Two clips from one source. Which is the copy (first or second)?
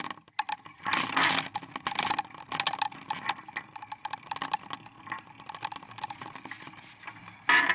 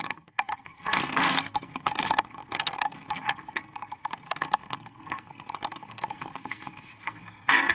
second